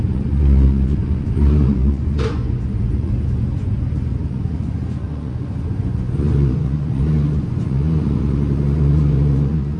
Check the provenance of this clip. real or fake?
fake